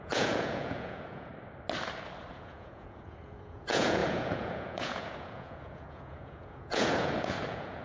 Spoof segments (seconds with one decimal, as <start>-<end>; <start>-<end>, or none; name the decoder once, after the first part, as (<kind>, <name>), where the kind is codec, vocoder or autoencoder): 0.0-1.3 (vocoder, Vocos); 2.3-7.8